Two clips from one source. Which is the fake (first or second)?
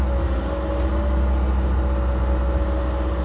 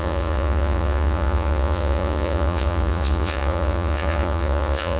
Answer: second